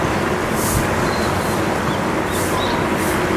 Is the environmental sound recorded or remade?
recorded